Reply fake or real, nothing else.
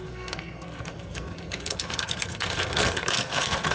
fake